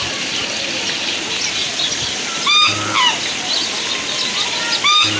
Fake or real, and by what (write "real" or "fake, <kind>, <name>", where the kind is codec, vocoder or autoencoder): real